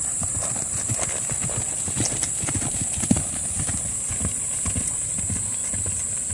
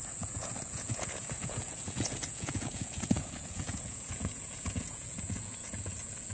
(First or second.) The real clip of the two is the first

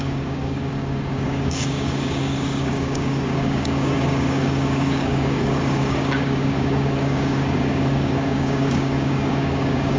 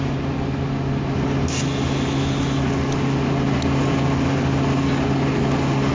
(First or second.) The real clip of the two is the second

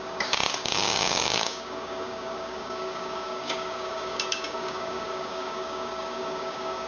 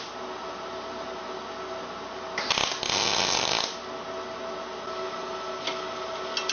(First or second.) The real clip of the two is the second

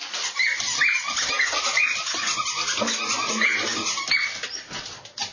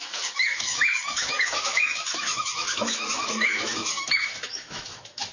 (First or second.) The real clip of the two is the first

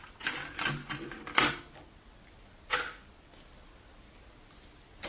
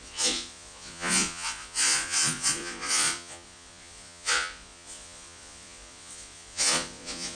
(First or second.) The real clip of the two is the first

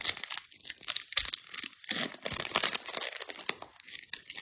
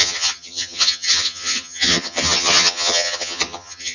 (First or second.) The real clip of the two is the first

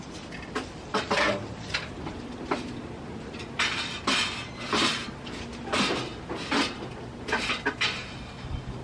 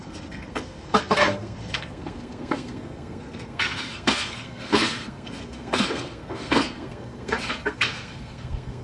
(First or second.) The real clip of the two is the first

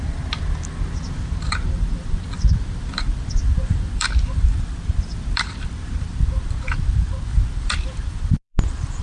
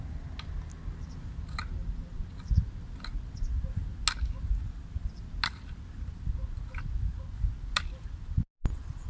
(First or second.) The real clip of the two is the second